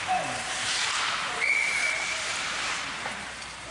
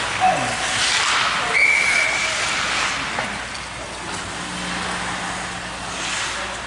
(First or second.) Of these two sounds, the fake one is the first